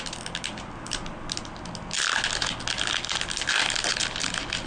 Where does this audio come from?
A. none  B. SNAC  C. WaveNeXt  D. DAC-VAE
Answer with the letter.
A